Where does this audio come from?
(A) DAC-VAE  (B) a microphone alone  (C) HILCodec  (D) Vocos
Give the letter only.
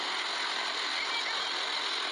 B